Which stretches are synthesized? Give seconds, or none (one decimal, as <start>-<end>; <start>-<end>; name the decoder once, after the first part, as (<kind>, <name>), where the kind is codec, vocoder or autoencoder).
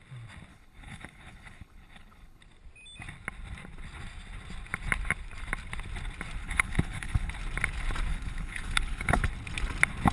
0.5-2.4 (codec, HILCodec); 6.4-7.3; 8.1-9.2